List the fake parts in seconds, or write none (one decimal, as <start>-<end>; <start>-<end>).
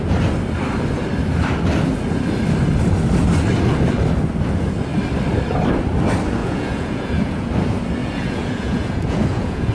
6.4-7.5; 8.0-9.7